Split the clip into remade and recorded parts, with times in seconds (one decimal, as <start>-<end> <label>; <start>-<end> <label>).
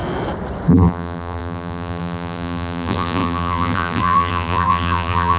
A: 0.0-0.7 recorded; 0.7-5.4 remade